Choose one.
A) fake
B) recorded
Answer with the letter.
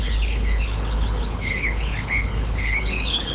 A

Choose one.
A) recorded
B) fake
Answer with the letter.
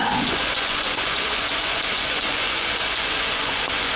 B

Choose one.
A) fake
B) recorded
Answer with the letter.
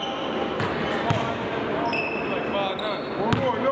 B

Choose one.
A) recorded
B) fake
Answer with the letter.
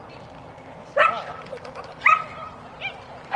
A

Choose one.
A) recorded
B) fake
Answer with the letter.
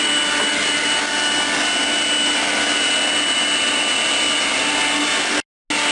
A